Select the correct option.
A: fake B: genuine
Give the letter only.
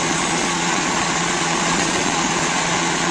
A